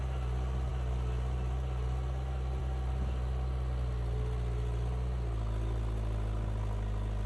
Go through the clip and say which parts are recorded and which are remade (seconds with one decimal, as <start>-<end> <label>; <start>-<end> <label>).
0.0-7.3 recorded